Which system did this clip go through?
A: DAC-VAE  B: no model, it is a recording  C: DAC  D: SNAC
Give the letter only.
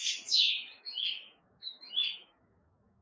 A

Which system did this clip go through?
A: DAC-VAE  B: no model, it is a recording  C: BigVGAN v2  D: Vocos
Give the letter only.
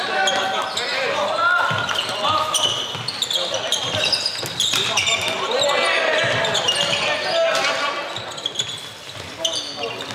B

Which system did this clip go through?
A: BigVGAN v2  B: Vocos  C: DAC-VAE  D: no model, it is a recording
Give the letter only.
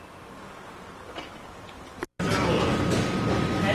D